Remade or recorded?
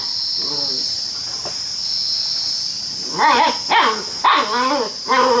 recorded